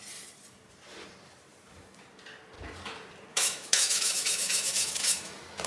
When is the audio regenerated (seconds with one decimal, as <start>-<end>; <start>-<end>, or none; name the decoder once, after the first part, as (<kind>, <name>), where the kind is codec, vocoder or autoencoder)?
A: 3.3-5.3 (autoencoder, DAC-VAE)